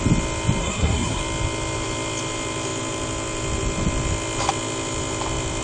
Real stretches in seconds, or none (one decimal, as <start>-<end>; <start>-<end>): 0.0-0.6; 1.2-5.6